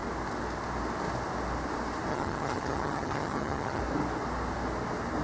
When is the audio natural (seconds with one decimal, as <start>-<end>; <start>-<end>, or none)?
0.0-2.1; 3.8-5.2